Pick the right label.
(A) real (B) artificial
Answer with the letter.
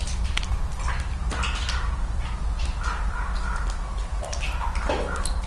A